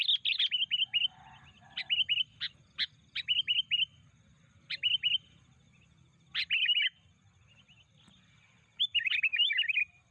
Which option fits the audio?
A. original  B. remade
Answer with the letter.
A